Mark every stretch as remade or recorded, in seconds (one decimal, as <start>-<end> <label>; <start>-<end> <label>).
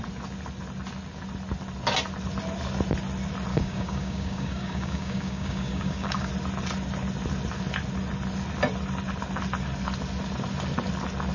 0.0-3.5 recorded; 3.5-6.3 remade; 6.3-11.3 recorded